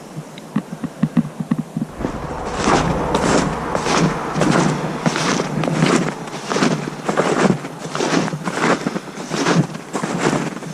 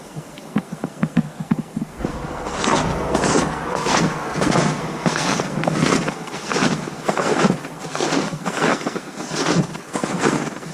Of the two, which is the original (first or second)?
first